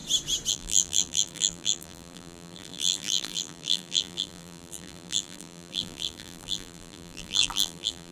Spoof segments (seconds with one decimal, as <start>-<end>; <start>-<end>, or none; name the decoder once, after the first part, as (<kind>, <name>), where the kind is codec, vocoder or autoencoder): 0.5-8.1 (vocoder, BigVGAN v2)